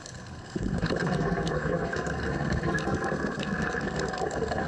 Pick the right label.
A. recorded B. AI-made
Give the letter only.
B